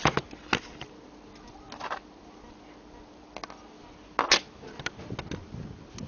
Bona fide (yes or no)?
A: yes